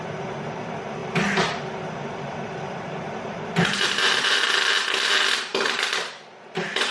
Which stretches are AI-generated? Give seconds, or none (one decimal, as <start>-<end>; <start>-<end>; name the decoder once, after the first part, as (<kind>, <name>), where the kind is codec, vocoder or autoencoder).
1.0-5.1 (vocoder, BigVGAN v2)